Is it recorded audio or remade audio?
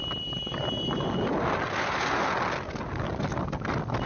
recorded